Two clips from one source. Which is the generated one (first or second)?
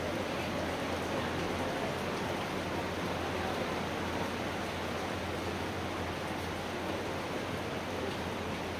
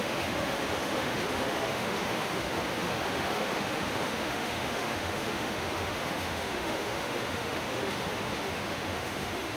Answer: second